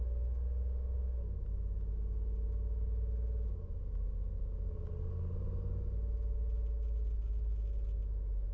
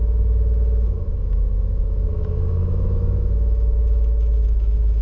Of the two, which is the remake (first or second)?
second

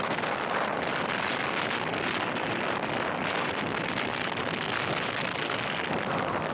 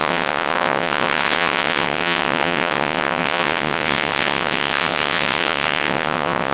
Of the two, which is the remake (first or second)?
second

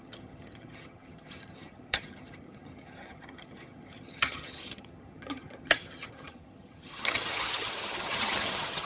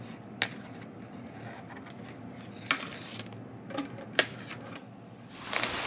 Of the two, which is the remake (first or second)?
first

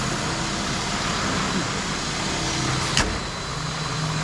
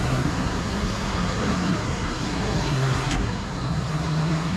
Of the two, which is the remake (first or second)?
second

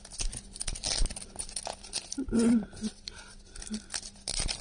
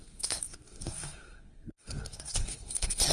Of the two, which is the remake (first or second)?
second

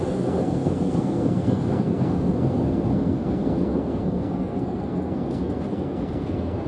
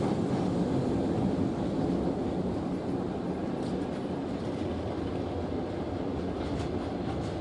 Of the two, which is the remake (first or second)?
first